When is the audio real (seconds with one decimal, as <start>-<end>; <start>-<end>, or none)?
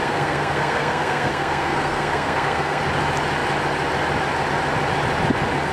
2.8-5.7